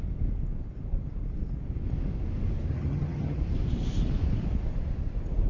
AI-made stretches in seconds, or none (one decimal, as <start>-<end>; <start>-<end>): 2.7-3.4